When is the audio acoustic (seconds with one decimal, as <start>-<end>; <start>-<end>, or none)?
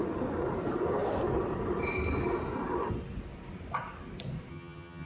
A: 0.0-4.5